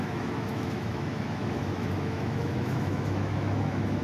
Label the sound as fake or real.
fake